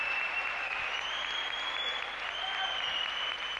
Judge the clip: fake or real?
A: real